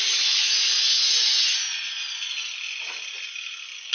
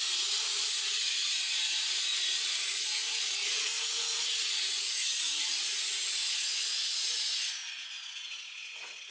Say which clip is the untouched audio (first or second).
first